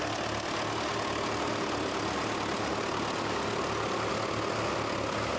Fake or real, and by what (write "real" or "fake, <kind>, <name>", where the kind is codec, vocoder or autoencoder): real